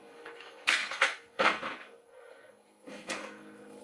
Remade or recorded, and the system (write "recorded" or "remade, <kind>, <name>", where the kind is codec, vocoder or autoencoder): remade, codec, SNAC